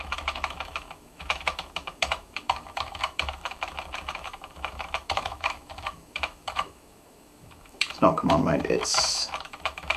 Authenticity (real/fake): fake